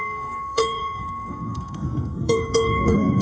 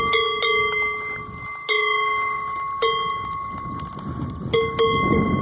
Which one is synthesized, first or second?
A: first